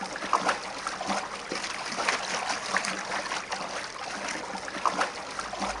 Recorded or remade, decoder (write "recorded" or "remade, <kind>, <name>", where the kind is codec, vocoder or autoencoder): recorded